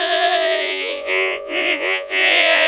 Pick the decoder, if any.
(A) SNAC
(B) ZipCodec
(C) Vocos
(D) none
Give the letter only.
C